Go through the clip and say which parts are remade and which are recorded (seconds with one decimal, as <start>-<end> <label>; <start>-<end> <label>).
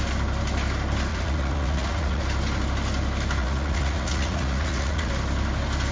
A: 0.0-1.1 recorded; 1.1-2.2 remade; 2.2-3.4 recorded; 3.4-5.1 remade; 5.1-5.9 recorded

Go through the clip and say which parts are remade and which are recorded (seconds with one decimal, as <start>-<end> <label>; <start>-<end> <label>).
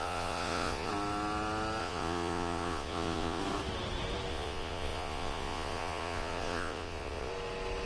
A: 0.0-0.9 remade; 0.9-1.8 recorded; 1.8-3.4 remade; 3.4-4.3 recorded; 4.3-7.3 remade; 7.3-7.9 recorded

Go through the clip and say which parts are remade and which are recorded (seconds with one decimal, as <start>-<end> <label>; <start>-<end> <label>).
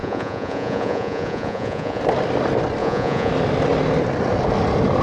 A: 0.0-2.0 remade; 2.0-2.8 recorded; 2.8-3.3 remade; 3.3-5.0 recorded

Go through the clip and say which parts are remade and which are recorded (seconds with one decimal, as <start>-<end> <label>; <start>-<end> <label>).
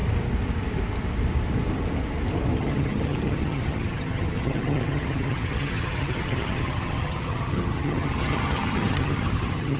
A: 0.0-2.6 recorded; 2.6-9.8 remade